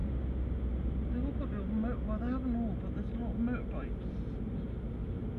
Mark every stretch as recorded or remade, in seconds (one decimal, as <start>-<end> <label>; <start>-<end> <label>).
0.0-5.4 recorded